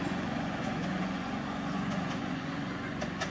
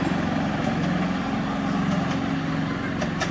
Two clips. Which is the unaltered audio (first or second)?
second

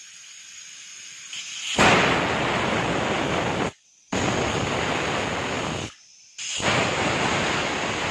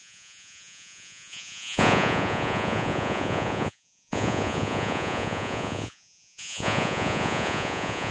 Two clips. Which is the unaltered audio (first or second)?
first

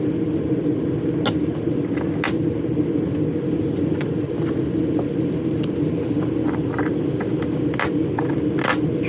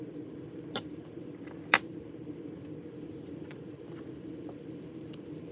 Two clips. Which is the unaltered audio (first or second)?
first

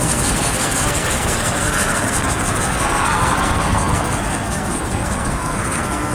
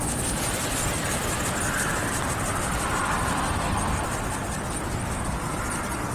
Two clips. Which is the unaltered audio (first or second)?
second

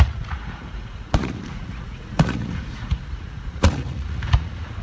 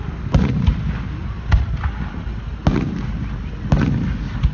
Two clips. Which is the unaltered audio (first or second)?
second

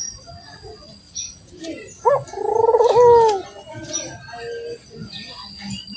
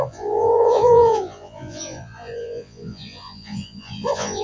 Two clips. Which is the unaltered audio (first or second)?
first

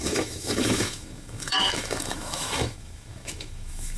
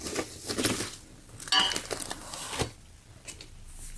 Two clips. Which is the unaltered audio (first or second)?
second